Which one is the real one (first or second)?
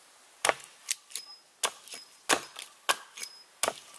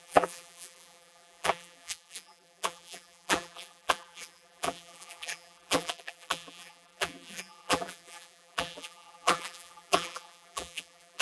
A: first